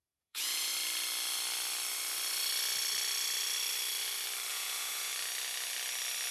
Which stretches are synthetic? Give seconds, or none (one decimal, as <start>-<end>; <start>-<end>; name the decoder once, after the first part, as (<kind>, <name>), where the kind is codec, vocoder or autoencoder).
0.0-0.7 (vocoder, Vocos); 4.5-5.1